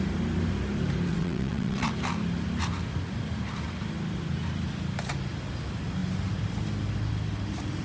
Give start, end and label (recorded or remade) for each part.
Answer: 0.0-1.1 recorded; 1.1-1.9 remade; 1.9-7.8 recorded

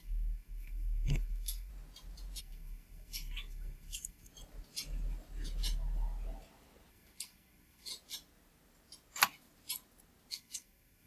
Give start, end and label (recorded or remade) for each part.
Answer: 0.0-1.7 remade; 1.7-2.4 recorded; 2.4-4.3 remade; 4.3-6.9 recorded; 6.9-7.9 remade; 7.9-10.3 recorded; 10.3-11.1 remade